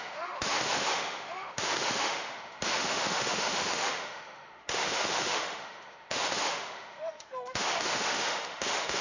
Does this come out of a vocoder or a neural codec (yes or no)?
yes